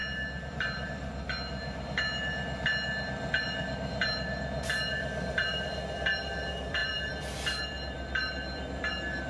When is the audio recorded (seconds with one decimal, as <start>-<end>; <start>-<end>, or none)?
0.0-0.5; 1.1-3.4